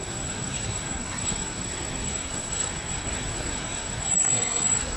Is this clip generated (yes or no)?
yes